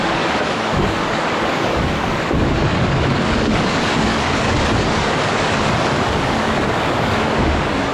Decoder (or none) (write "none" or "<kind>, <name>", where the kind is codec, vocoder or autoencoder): codec, DAC